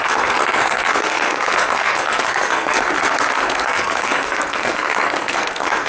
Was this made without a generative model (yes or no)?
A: no